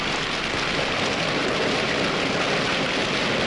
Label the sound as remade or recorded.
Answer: recorded